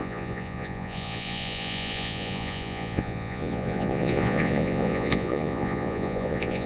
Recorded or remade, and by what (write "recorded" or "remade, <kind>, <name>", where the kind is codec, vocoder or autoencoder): remade, vocoder, Vocos